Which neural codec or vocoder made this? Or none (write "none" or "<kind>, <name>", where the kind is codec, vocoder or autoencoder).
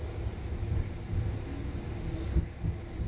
none